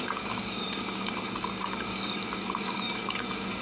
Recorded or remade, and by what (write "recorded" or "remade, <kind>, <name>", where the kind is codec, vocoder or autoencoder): remade, codec, DAC